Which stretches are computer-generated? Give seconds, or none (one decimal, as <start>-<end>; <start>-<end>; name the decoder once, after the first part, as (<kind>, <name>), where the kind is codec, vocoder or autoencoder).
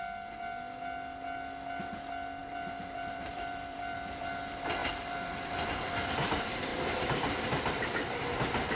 2.4-4.3 (vocoder, BigVGAN v2); 4.8-5.7